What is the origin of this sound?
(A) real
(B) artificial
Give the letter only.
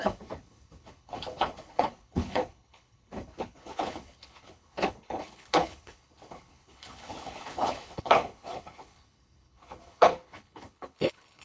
B